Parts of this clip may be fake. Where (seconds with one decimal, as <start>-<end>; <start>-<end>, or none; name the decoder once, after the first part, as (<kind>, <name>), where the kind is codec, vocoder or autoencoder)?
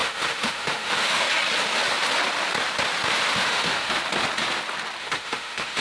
0.0-1.3 (autoencoder, DAC-VAE); 3.3-3.9; 5.0-5.8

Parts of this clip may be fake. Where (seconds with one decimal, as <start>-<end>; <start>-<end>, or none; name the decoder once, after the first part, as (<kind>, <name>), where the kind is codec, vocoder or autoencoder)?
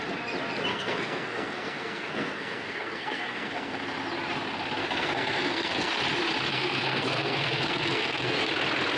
0.7-3.8 (codec, SNAC); 4.8-5.9; 6.5-8.5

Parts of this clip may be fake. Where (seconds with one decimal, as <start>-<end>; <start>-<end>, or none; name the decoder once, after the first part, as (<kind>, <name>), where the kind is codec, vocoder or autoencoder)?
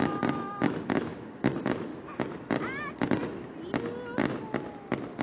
0.0-1.9 (autoencoder, DAC-VAE)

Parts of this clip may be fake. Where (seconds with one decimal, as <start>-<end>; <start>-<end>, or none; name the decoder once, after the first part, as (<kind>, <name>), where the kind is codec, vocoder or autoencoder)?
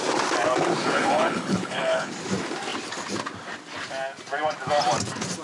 0.8-2.1 (codec, HILCodec)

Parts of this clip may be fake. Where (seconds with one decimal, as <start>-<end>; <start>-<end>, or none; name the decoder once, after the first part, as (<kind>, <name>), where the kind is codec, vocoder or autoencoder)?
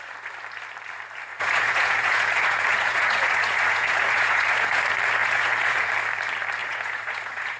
1.3-4.8 (vocoder, Vocos); 5.2-5.9; 6.6-7.6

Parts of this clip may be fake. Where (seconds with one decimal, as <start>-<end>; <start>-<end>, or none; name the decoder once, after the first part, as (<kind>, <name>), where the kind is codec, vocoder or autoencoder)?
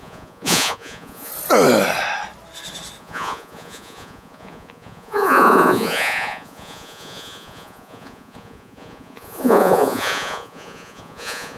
0.0-1.3 (vocoder, Vocos); 3.0-11.6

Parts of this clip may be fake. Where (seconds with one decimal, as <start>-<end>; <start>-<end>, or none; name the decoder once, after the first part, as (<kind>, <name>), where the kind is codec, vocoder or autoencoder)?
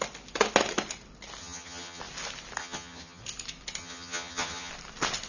1.4-2.0 (vocoder, HiFi-GAN); 2.6-3.2; 3.8-4.7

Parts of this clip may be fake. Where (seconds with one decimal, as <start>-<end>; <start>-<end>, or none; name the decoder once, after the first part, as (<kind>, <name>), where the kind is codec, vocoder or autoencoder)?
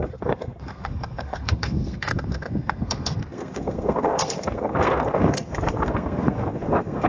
0.0-7.1 (codec, SNAC)